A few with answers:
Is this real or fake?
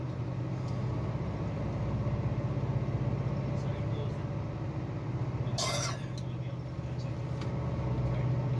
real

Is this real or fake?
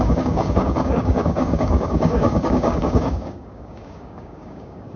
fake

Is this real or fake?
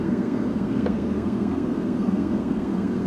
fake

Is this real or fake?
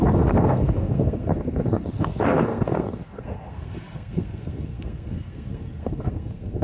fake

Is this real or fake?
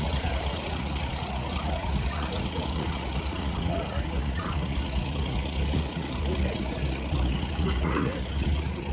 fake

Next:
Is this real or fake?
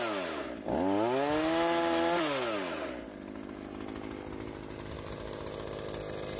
real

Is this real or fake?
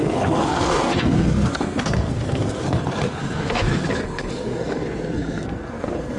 fake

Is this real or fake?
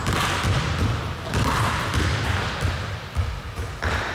real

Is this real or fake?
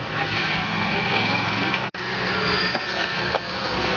fake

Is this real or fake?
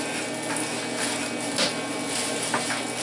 real